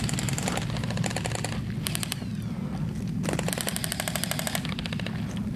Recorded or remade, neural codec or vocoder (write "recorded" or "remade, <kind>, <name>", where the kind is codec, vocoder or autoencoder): recorded